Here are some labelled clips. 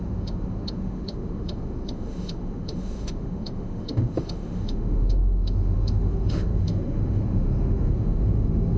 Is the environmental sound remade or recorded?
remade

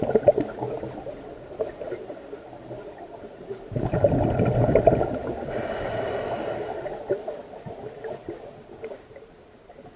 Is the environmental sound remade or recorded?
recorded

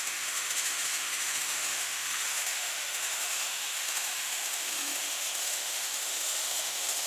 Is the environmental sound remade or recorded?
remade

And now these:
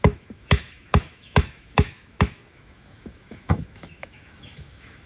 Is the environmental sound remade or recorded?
remade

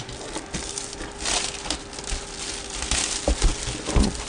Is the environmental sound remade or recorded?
recorded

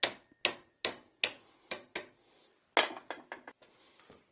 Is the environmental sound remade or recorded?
recorded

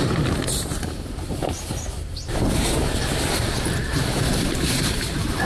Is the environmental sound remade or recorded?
recorded